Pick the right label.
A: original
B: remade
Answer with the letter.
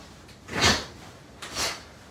A